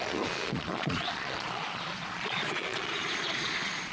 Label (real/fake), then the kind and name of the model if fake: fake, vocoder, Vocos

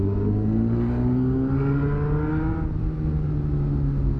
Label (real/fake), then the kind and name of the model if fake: real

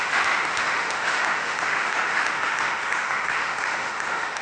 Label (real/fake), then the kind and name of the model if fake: fake, autoencoder, DAC-VAE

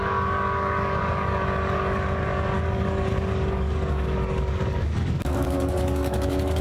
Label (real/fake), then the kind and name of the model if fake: fake, codec, DAC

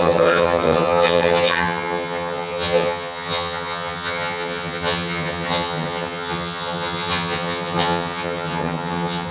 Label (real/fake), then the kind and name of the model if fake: fake, vocoder, HiFi-GAN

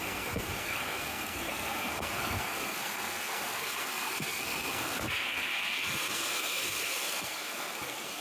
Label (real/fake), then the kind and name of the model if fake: fake, codec, SNAC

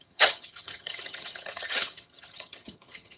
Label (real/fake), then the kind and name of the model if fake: fake, vocoder, HiFi-GAN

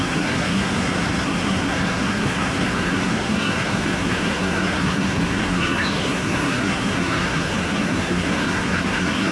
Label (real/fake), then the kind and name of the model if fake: fake, codec, SNAC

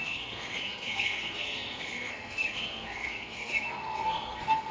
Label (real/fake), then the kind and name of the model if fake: fake, codec, SNAC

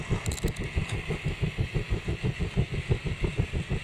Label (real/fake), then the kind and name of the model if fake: real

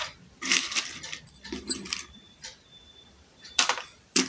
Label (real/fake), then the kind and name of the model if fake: fake, vocoder, BigVGAN v2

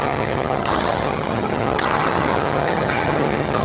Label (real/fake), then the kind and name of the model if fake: fake, vocoder, HiFi-GAN